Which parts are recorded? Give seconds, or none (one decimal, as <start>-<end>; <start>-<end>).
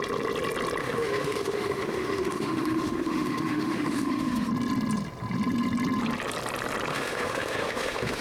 0.0-0.8; 4.5-6.9